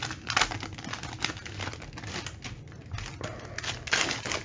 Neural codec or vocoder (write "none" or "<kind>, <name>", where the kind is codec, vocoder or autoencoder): none